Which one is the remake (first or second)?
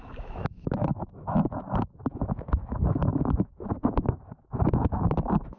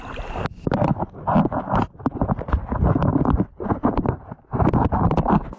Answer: first